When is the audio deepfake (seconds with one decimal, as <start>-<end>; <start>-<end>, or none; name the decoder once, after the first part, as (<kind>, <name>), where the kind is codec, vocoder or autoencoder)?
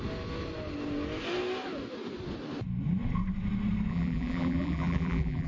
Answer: 3.9-5.5 (vocoder, BigVGAN v2)